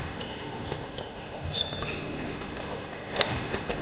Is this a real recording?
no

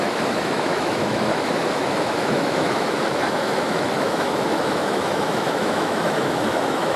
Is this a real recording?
no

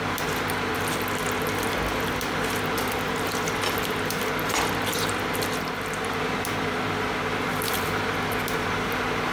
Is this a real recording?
yes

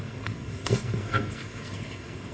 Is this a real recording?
no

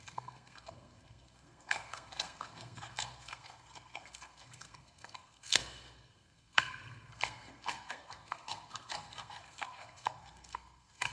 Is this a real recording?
no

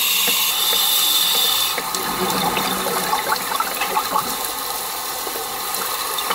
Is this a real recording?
yes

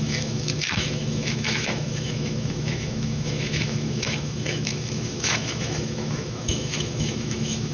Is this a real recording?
no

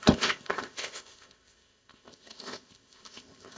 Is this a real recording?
no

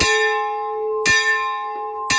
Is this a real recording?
yes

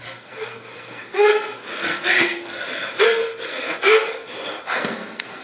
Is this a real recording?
no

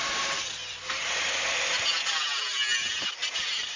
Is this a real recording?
yes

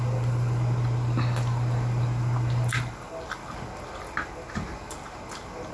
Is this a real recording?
yes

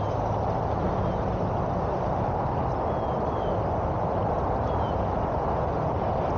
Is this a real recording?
yes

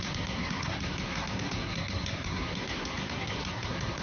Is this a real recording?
no